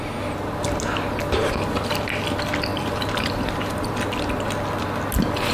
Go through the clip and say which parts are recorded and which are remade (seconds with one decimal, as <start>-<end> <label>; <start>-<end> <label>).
0.0-2.7 recorded; 2.7-3.9 remade; 3.9-5.5 recorded